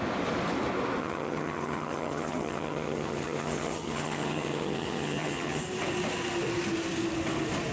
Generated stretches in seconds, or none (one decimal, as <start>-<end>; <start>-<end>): 1.0-5.6